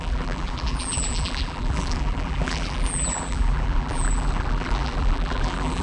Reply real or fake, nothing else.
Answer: fake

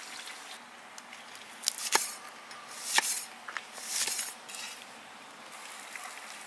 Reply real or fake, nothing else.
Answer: real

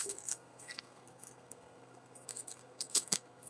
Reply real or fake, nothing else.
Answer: fake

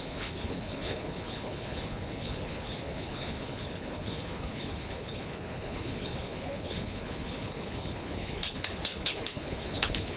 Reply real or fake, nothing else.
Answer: fake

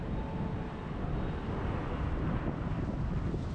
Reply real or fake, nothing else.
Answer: real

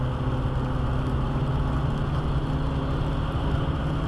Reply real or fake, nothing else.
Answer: real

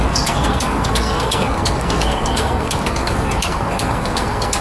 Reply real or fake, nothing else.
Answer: fake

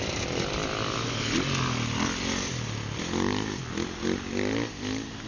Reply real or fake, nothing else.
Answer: real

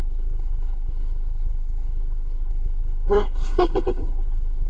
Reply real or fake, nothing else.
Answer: fake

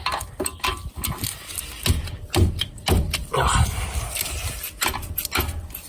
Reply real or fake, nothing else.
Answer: real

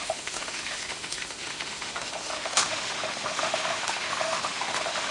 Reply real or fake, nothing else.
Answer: fake